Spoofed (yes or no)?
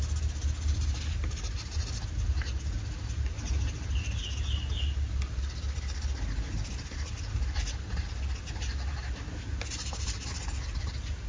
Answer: no